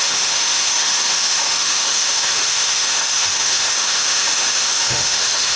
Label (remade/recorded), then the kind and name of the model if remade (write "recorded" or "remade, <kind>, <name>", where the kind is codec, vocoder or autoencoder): remade, autoencoder, DAC-VAE